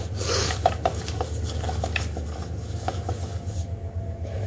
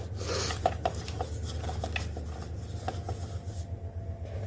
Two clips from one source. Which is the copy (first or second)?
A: first